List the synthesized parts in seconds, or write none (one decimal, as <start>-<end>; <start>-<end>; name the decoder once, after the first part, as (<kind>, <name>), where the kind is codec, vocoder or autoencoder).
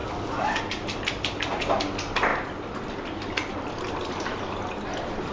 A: 0.0-0.6 (codec, DAC)